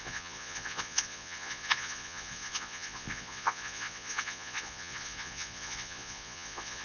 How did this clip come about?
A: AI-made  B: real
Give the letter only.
A